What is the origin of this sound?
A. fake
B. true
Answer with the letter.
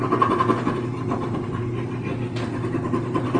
A